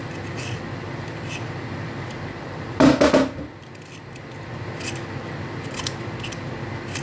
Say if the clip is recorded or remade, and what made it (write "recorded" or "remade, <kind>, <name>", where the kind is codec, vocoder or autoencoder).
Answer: recorded